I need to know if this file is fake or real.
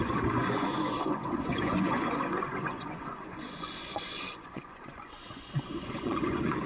fake